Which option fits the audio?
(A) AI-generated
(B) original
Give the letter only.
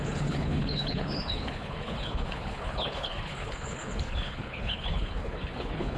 A